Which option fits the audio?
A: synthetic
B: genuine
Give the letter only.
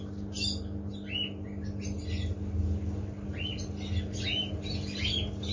B